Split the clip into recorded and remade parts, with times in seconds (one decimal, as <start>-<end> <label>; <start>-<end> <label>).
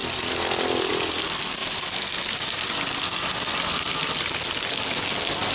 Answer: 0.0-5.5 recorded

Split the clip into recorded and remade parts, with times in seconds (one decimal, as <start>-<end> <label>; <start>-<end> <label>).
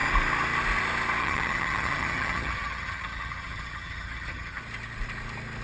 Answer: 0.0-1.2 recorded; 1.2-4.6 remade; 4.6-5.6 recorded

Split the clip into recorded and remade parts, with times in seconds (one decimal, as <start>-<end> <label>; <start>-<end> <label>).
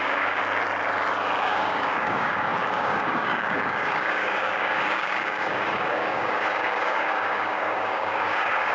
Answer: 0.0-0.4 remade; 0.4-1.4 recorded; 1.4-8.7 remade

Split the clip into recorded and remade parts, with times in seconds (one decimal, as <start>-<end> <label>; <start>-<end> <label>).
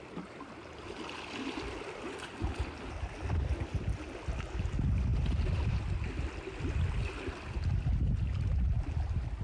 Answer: 0.0-9.4 recorded